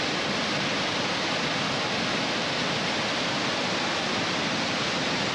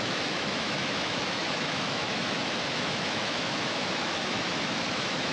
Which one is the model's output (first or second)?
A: second